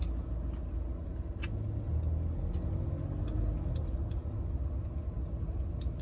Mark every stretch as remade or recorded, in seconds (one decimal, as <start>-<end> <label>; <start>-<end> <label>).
0.0-6.0 recorded